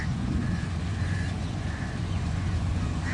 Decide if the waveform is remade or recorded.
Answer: remade